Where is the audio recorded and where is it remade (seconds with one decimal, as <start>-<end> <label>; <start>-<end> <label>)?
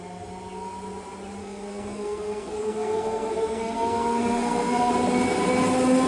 0.0-1.4 recorded; 1.4-4.9 remade; 4.9-6.1 recorded